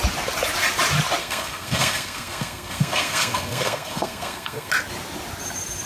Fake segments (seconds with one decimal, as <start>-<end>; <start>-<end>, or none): 1.2-4.7